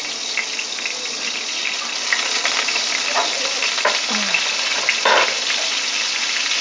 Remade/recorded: recorded